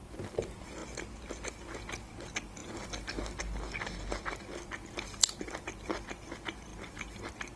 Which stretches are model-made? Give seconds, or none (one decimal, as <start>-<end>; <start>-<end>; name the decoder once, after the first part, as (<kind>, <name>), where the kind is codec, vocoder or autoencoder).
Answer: none